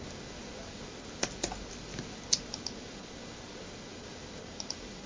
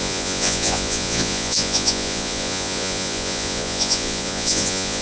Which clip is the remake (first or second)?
second